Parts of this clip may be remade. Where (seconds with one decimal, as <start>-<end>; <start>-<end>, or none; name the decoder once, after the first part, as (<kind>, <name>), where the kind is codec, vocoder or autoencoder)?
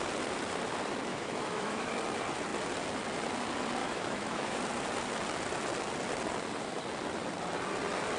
1.1-1.9 (autoencoder, DAC-VAE); 3.8-4.6